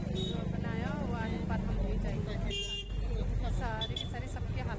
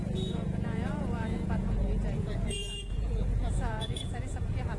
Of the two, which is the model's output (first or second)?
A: second